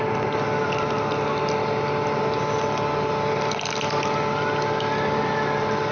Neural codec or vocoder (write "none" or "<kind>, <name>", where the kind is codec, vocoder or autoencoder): none